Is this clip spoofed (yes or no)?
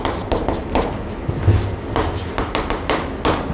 no